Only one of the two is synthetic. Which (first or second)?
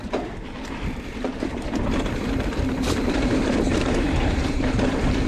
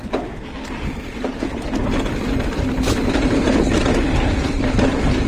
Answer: first